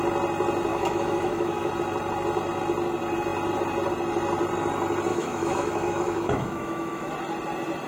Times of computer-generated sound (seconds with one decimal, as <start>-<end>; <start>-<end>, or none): 0.7-1.7; 5.1-7.1